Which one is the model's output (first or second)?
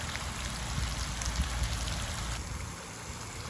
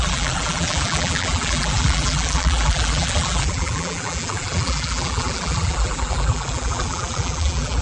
second